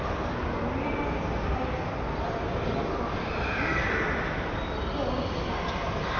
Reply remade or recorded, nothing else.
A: recorded